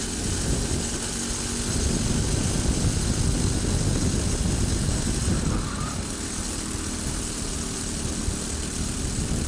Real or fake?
real